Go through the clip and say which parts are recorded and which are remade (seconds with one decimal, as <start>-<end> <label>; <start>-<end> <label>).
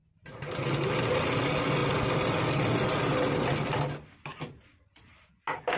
0.0-5.8 recorded